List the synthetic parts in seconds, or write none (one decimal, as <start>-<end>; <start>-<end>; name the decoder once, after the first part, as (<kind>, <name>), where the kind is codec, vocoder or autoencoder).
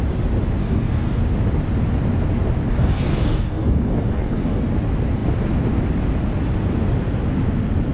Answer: 0.6-1.2 (codec, DAC); 2.7-4.6